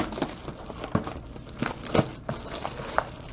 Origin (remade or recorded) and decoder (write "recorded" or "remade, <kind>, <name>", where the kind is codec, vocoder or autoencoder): remade, vocoder, BigVGAN v2